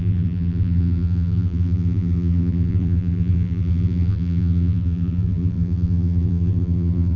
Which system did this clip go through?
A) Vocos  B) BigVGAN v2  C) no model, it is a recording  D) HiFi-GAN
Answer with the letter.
B